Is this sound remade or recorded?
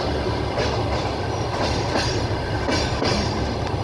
recorded